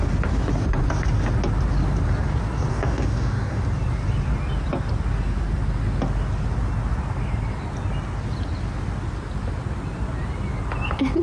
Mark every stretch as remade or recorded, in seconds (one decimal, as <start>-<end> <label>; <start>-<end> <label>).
0.0-2.7 recorded; 2.7-3.6 remade; 3.6-11.2 recorded